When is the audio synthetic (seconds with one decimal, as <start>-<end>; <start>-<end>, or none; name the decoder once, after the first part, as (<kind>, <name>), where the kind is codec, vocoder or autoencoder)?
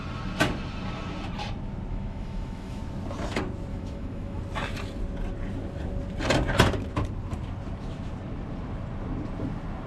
1.9-2.8 (autoencoder, DAC-VAE); 3.7-4.4